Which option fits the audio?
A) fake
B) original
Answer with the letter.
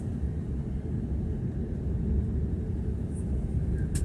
B